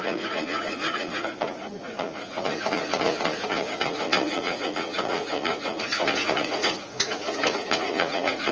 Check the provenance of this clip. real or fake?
fake